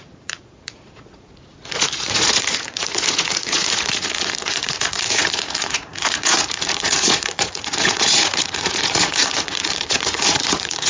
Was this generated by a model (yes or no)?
yes